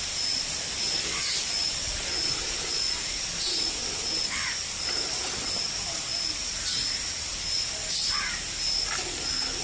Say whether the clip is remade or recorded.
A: recorded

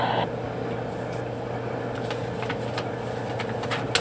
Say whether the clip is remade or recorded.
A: recorded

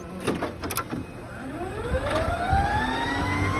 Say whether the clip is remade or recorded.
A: recorded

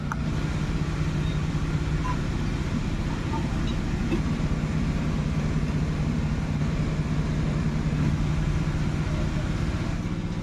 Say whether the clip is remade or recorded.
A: recorded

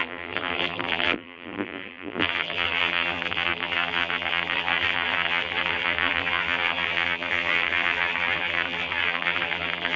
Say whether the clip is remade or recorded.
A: remade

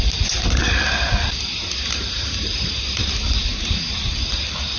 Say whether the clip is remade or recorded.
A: recorded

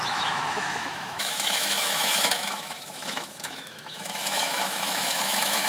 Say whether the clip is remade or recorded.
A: remade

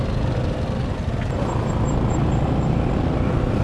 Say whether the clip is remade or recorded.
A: recorded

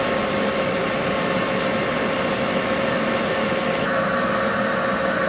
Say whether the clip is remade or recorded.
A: recorded